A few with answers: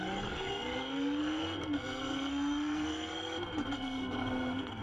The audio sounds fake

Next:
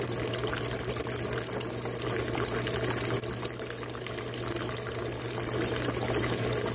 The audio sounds real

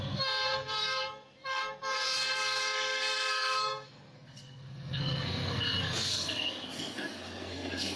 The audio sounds fake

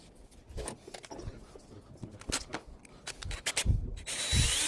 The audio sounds real